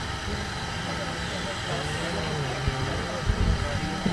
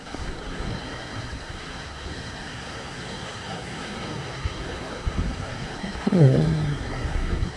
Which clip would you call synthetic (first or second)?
second